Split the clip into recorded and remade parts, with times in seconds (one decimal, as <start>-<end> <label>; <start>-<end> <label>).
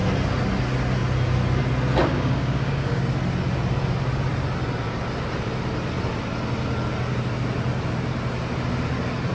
0.0-2.0 recorded; 2.0-3.0 remade; 3.0-9.3 recorded